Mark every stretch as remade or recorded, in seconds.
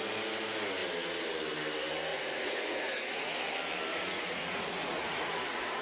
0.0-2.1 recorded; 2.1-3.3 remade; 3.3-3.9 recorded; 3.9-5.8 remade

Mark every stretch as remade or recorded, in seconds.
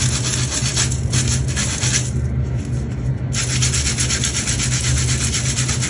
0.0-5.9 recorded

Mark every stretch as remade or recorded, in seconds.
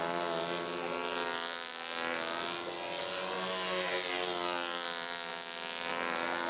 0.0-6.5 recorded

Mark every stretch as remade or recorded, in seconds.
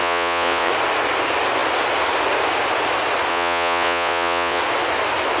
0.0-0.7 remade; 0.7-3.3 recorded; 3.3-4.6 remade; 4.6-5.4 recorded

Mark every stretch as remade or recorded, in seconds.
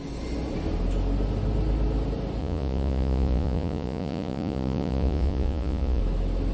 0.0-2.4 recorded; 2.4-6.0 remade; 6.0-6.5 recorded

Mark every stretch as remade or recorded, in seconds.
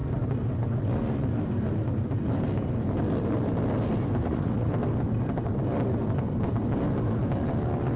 0.0-4.2 recorded; 4.2-4.7 remade; 4.7-8.0 recorded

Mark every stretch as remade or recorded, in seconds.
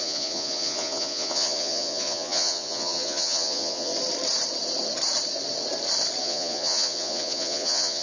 0.0-3.9 remade; 3.9-6.2 recorded; 6.2-8.0 remade